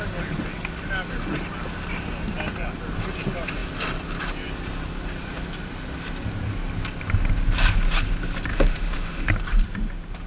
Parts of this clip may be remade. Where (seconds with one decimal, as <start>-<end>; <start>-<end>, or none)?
8.5-9.3